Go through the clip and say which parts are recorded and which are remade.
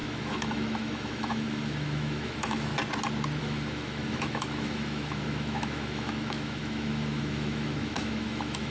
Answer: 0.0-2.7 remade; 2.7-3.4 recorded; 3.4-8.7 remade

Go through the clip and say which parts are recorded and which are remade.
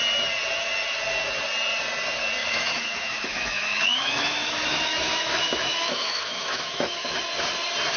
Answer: 0.0-2.4 recorded; 2.4-7.2 remade; 7.2-8.0 recorded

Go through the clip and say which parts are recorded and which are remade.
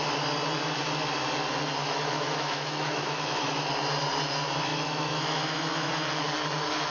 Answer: 0.0-1.8 recorded; 1.8-3.7 remade; 3.7-4.7 recorded; 4.7-5.9 remade; 5.9-6.9 recorded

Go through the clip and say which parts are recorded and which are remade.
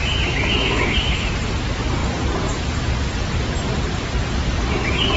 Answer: 0.0-1.3 remade; 1.3-5.2 recorded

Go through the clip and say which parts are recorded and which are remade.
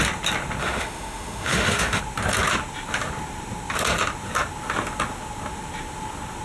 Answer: 0.0-0.6 recorded; 0.6-2.0 remade; 2.0-6.4 recorded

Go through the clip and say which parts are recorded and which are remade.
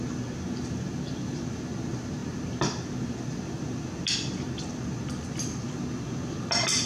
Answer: 0.0-6.9 recorded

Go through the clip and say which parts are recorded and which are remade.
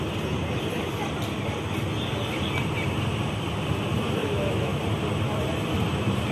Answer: 0.0-4.2 recorded; 4.2-4.8 remade; 4.8-6.3 recorded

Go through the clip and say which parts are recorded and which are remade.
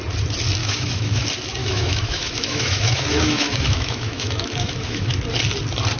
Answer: 0.0-0.6 recorded; 0.6-1.2 remade; 1.2-1.6 recorded; 1.6-5.1 remade; 5.1-6.0 recorded